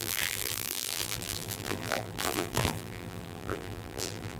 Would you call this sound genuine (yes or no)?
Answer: no